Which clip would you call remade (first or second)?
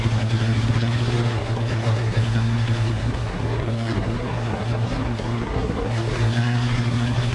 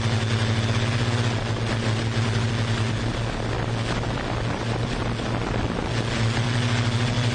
first